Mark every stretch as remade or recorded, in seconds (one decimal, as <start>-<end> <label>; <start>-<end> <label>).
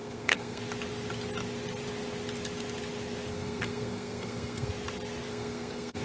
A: 0.0-0.6 remade; 0.6-3.3 recorded; 3.3-4.7 remade; 4.7-5.3 recorded; 5.3-6.0 remade